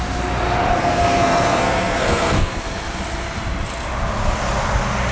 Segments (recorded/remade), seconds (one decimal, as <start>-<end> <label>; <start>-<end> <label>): 0.0-0.8 recorded; 0.8-2.6 remade; 2.6-5.1 recorded